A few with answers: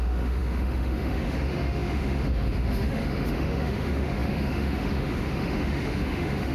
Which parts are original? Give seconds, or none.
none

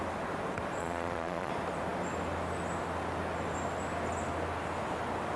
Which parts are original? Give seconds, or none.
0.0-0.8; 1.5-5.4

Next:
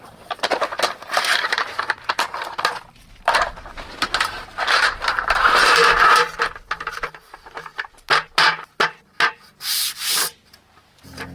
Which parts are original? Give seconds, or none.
none

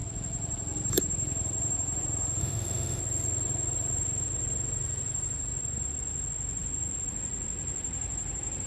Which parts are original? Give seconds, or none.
0.0-2.4; 3.0-8.7

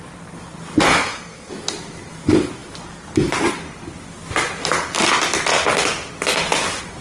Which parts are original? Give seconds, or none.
0.0-0.9; 1.5-7.0

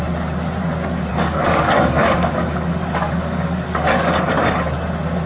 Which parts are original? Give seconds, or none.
0.0-1.1; 4.3-5.3

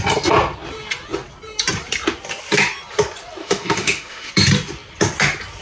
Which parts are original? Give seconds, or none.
0.0-3.4; 4.3-5.6

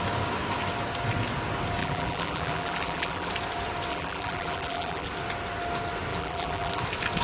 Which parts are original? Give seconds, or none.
0.0-1.8; 3.3-3.9; 5.1-6.1; 6.8-7.2